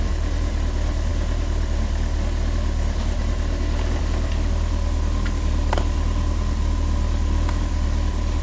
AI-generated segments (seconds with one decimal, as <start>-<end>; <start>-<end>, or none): none